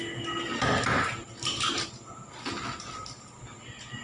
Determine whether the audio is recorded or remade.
recorded